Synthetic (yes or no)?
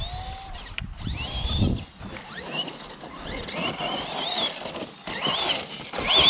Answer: no